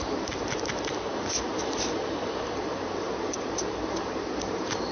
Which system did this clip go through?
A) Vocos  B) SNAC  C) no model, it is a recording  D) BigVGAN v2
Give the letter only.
D